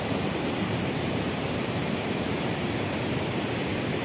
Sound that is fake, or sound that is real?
fake